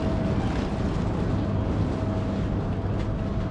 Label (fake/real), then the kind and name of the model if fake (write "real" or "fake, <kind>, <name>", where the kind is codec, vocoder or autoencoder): real